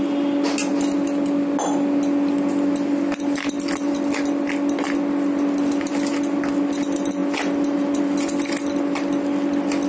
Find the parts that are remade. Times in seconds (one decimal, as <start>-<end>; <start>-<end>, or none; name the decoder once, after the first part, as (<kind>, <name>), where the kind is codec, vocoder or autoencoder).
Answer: none